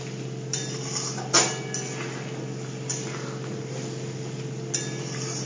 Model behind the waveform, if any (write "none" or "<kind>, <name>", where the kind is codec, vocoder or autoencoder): none